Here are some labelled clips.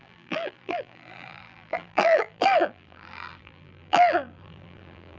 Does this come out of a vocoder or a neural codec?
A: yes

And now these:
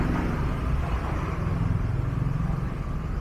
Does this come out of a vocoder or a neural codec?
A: no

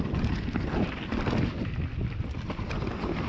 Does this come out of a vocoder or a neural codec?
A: no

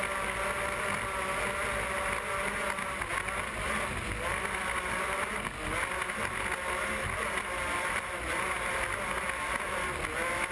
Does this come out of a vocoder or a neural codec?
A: no